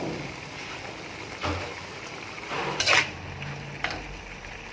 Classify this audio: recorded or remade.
remade